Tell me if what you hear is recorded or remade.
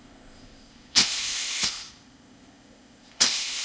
remade